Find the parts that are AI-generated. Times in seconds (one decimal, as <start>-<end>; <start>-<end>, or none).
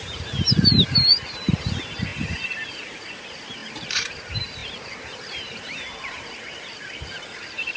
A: 0.0-2.1; 3.1-7.8